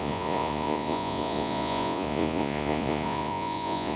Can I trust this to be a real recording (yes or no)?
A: no